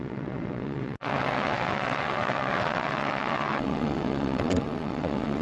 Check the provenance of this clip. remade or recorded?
remade